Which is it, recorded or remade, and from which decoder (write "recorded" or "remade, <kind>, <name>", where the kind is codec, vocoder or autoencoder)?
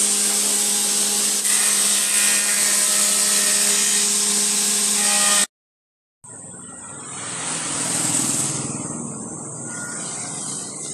recorded